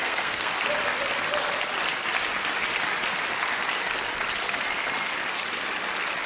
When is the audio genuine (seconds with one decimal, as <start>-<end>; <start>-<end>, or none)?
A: 0.5-6.3